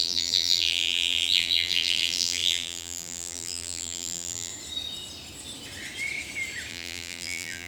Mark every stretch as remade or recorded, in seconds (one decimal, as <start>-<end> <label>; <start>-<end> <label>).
0.0-4.5 remade; 4.5-6.7 recorded; 6.7-7.7 remade